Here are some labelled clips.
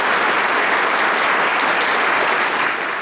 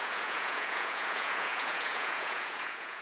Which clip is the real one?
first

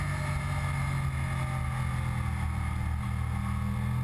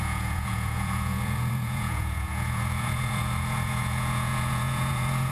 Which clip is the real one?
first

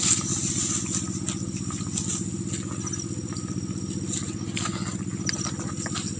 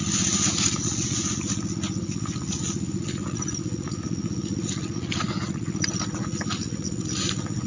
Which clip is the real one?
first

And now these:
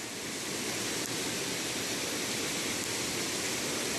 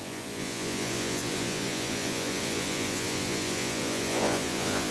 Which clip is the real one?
first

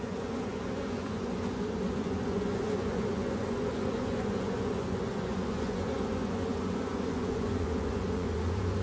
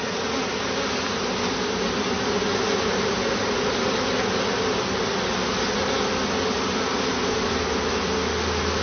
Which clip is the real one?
second